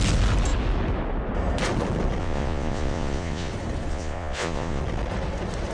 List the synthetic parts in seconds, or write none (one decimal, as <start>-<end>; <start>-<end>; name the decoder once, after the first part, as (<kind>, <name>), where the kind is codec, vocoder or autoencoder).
2.2-3.5 (vocoder, Vocos); 3.9-4.8